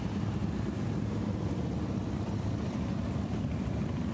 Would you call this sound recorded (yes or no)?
yes